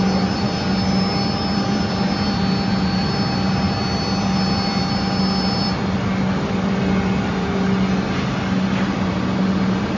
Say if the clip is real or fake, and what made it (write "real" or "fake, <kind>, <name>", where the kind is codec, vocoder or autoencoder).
real